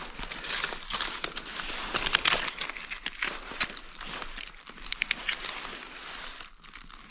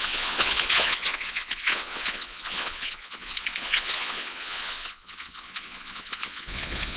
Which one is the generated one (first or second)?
second